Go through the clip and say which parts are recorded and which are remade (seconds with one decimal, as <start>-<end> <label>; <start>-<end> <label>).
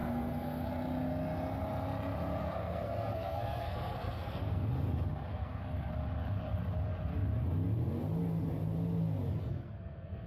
0.0-0.7 remade; 0.7-2.4 recorded; 2.4-4.7 remade; 4.7-5.3 recorded; 5.3-5.9 remade; 5.9-9.4 recorded; 9.4-10.3 remade